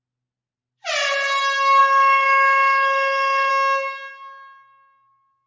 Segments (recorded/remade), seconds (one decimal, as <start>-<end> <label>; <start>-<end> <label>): 0.0-1.8 recorded; 1.8-3.5 remade; 3.5-5.5 recorded